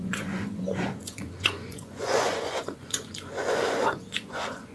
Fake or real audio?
fake